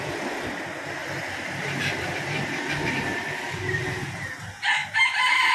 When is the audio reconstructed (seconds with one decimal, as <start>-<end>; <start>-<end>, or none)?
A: 1.0-3.8; 4.8-5.5